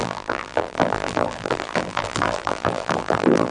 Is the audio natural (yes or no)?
no